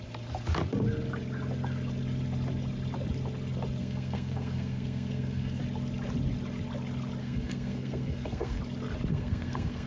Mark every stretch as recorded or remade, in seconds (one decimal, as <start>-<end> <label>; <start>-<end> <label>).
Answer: 0.0-3.8 recorded; 3.8-5.6 remade; 5.6-7.2 recorded; 7.2-8.6 remade; 8.6-9.1 recorded; 9.1-9.9 remade